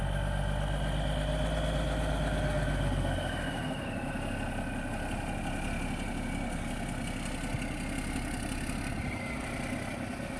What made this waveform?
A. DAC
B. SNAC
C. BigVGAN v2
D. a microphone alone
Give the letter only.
D